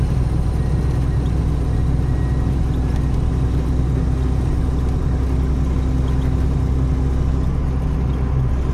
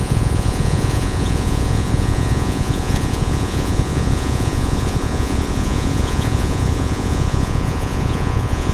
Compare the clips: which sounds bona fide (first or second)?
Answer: first